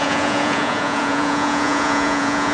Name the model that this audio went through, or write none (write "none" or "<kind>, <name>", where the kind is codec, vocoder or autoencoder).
vocoder, Vocos